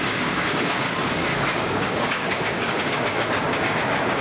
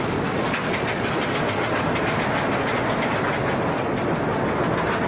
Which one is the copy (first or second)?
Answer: first